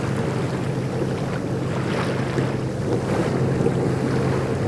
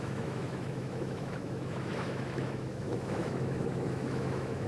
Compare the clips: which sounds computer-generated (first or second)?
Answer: second